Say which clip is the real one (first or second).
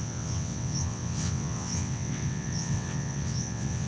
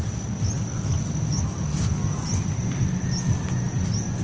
second